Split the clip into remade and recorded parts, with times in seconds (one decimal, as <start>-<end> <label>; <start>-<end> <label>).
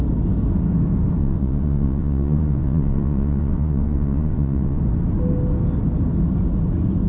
0.0-1.2 recorded; 1.2-4.8 remade; 4.8-7.1 recorded